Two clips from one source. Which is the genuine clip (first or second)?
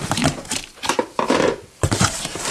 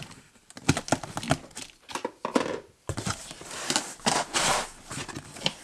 second